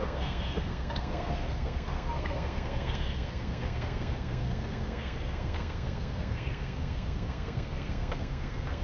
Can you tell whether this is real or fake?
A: fake